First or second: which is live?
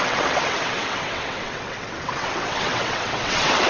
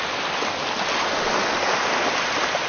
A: second